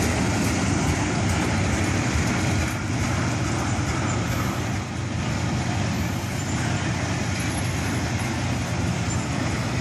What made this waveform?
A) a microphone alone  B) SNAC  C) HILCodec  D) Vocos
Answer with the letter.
A